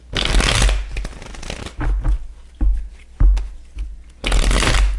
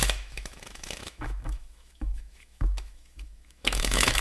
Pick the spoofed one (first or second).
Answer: second